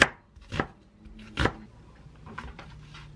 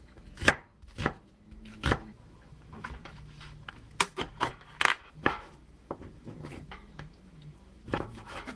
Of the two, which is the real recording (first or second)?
first